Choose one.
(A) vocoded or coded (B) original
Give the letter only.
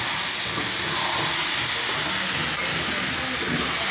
B